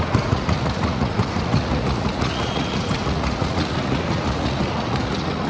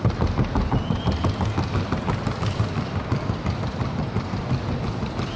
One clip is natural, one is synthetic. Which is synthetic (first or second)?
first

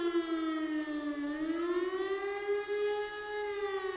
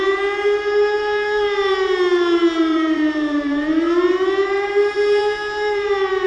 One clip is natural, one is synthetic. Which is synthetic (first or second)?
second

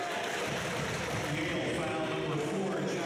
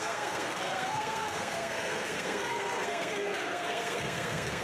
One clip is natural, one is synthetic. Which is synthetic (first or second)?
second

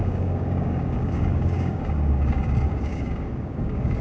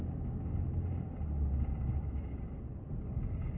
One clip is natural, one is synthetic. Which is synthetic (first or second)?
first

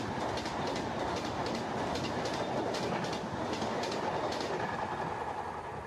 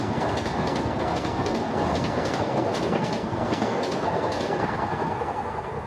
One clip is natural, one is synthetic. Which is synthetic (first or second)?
second